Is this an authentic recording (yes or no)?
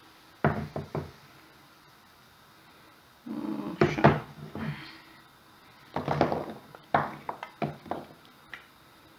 yes